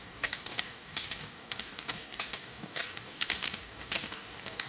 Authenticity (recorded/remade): remade